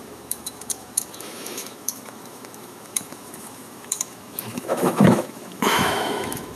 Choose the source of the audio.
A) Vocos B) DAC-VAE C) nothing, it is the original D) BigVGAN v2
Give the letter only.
B